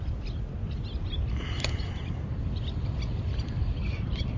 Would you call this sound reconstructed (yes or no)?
no